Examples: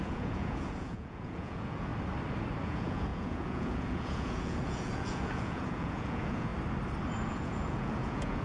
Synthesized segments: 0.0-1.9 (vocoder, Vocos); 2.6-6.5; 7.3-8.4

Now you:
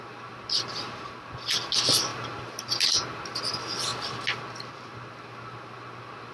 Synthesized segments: none

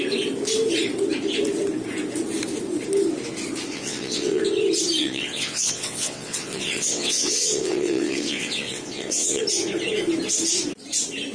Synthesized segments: 3.7-4.4 (vocoder, WaveNeXt); 5.0-9.4

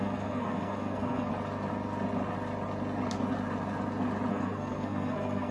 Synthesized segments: 0.0-1.3 (codec, SNAC); 4.3-5.5

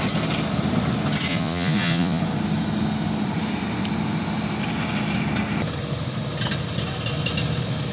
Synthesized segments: 1.3-2.2 (vocoder, Vocos)

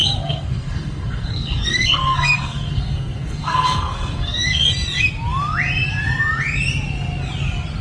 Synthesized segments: 0.0-4.7 (codec, SNAC)

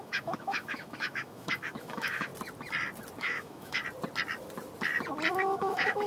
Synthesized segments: 0.0-2.3 (autoencoder, DAC-VAE); 3.2-3.8; 5.3-6.1